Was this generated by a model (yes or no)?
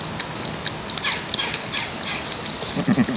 no